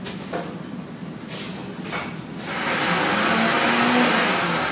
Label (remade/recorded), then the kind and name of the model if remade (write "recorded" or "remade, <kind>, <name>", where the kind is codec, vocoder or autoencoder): recorded